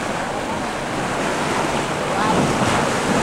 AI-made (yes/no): no